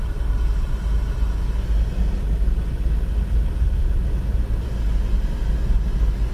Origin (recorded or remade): recorded